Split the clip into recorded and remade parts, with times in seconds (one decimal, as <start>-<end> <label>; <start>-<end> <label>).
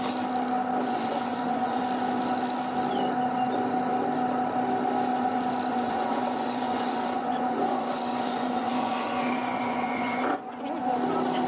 0.0-0.8 recorded; 0.8-1.8 remade; 1.8-5.7 recorded; 5.7-10.8 remade; 10.8-11.5 recorded